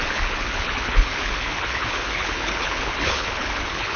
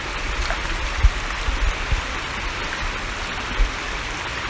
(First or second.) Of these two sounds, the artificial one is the first